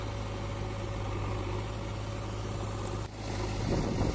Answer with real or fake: real